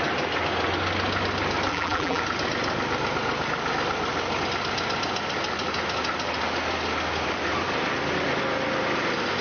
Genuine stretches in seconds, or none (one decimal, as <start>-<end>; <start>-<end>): 0.0-1.7; 2.2-9.4